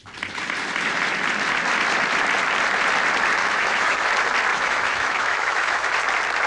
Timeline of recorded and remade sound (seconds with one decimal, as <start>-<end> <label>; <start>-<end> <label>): 0.0-3.4 recorded; 3.4-4.1 remade; 4.1-4.5 recorded; 4.5-6.0 remade; 6.0-6.5 recorded